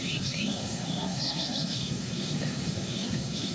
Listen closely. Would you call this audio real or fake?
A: fake